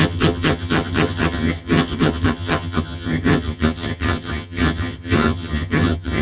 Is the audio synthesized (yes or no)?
yes